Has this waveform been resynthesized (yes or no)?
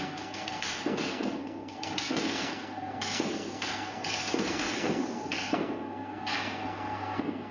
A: yes